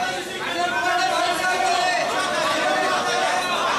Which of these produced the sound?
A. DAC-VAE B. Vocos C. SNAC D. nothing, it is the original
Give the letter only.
D